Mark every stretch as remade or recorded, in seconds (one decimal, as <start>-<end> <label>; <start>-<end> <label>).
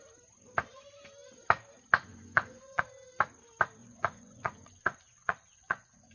0.0-2.1 recorded; 2.1-2.8 remade; 2.8-3.8 recorded; 3.8-6.1 remade